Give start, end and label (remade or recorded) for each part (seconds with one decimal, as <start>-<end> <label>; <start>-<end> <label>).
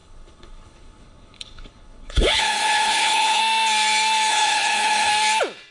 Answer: 0.0-3.4 remade; 3.4-4.3 recorded; 4.3-5.1 remade; 5.1-5.7 recorded